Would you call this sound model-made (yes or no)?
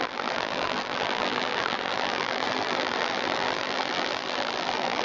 yes